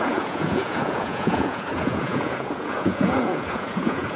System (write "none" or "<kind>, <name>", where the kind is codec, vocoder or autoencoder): vocoder, Vocos